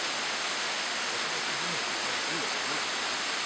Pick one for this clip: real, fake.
real